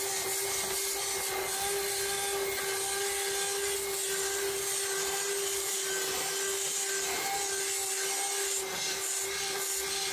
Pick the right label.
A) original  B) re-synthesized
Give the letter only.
A